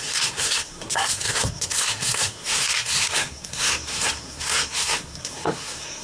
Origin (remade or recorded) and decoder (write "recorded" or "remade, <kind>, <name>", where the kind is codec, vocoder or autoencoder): remade, codec, SNAC